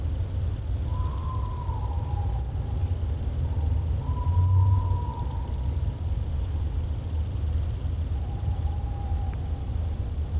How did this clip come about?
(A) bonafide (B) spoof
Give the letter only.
A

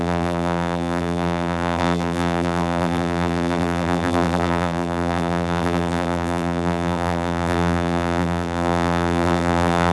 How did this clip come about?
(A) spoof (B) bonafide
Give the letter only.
A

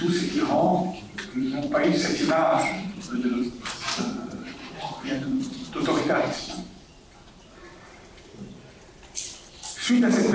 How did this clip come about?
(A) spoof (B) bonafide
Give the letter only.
A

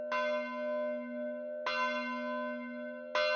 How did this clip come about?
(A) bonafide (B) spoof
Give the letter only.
A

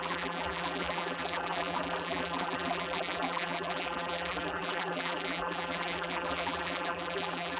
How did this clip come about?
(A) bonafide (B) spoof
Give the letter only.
B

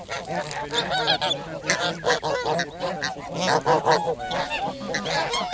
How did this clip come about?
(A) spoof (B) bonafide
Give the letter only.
B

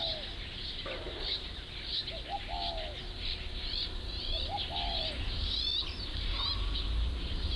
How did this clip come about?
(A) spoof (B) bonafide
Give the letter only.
A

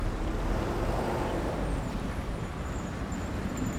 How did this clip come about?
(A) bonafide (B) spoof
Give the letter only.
B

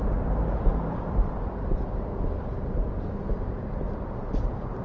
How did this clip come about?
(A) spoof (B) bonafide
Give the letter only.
A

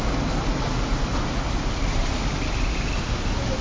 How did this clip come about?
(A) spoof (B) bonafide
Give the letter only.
B